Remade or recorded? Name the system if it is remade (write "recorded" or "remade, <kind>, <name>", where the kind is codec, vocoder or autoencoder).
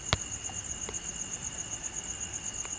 recorded